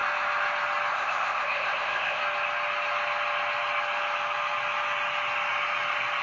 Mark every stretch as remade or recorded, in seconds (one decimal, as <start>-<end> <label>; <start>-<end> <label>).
0.0-0.9 recorded; 0.9-2.2 remade; 2.2-6.2 recorded